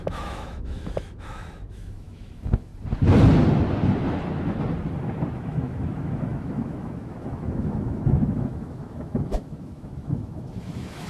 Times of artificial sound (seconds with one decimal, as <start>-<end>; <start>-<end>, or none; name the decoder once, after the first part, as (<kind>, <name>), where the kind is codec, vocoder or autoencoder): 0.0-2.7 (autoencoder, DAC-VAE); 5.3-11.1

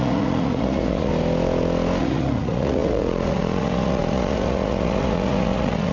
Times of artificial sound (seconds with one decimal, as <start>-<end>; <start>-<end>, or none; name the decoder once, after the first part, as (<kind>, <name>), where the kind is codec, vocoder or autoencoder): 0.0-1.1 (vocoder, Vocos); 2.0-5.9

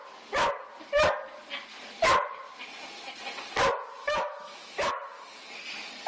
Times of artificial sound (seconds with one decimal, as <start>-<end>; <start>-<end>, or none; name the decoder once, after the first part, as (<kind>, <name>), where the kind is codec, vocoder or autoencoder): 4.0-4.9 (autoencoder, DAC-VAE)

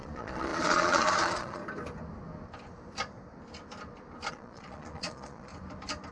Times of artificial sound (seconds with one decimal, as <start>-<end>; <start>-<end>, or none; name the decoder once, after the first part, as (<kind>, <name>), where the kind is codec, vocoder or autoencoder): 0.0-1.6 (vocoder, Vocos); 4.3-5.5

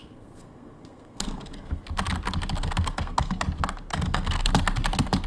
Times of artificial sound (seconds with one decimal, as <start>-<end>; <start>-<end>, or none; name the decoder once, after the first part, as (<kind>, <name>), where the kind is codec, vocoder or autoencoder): 0.0-1.8 (codec, SNAC); 2.6-3.4; 3.9-4.5

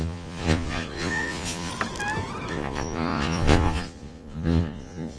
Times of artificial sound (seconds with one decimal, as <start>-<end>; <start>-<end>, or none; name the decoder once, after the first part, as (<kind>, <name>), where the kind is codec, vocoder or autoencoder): 0.0-1.7 (vocoder, Vocos); 2.5-5.2

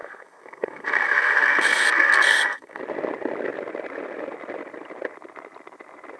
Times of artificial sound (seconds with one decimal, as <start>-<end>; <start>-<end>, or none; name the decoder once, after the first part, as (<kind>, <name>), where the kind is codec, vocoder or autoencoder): 0.0-2.8 (codec, SNAC)